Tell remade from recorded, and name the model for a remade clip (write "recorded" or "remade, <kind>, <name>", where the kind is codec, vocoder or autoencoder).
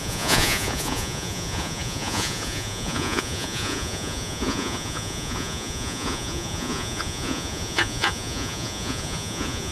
remade, vocoder, Vocos